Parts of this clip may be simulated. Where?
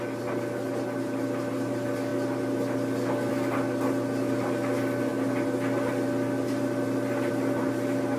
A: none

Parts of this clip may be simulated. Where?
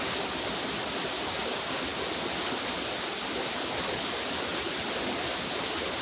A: 4.5-6.0 (vocoder, BigVGAN v2)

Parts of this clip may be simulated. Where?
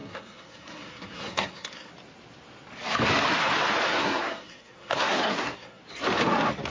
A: 0.0-1.9 (codec, SNAC); 4.0-5.8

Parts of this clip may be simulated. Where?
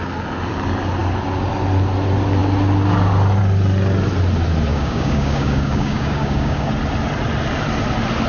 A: 4.7-6.7 (codec, DAC)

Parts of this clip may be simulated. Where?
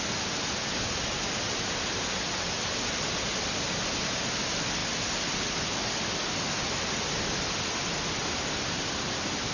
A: none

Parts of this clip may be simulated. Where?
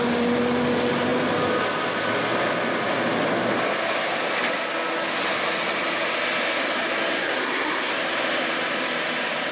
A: 7.2-7.9 (codec, SNAC)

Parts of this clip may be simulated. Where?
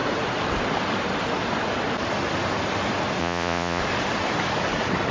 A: 3.2-3.8 (vocoder, Vocos)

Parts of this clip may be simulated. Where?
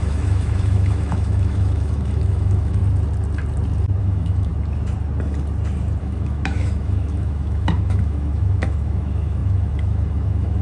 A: 0.0-2.8 (autoencoder, DAC-VAE); 4.0-4.5; 6.0-10.6